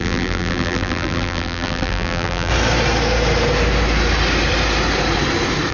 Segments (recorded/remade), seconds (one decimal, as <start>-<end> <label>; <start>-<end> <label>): 0.0-2.5 remade; 2.5-5.7 recorded